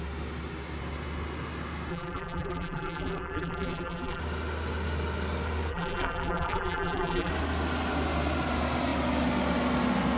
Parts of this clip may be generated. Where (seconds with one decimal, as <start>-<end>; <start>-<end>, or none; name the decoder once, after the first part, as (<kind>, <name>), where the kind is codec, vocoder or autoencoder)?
1.9-4.2 (vocoder, BigVGAN v2); 5.7-7.3